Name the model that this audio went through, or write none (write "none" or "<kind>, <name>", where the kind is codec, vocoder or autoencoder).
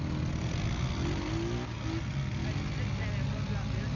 none